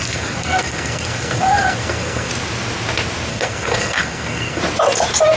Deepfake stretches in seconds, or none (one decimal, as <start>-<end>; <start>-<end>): 0.0-2.3; 3.3-4.6